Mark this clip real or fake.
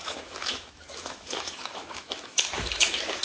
fake